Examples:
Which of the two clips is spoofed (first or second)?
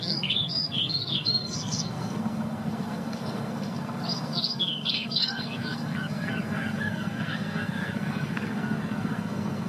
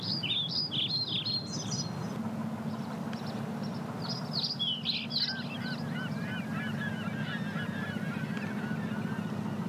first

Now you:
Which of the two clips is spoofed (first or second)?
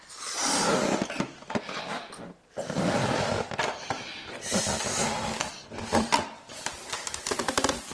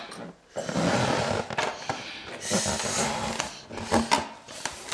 first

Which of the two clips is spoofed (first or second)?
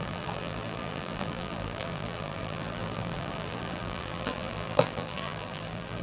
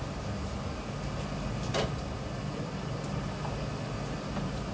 first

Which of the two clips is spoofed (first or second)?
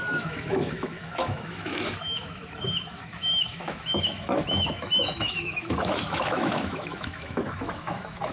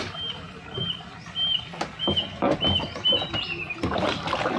first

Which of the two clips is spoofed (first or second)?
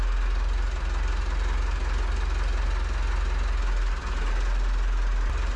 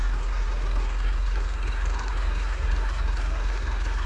second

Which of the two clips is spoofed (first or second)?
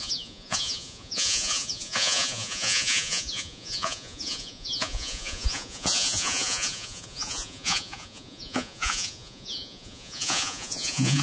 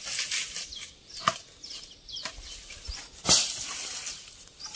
first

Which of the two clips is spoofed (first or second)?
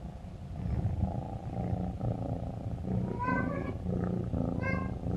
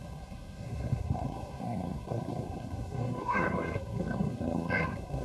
second